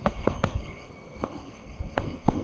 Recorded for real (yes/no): no